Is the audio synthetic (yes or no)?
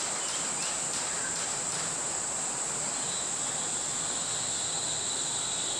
no